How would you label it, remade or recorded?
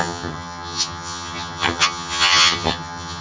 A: remade